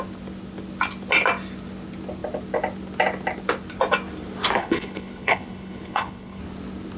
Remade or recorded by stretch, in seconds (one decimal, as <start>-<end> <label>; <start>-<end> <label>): 0.0-4.6 recorded; 4.6-6.4 remade; 6.4-7.0 recorded